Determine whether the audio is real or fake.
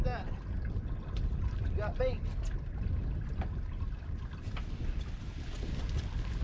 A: real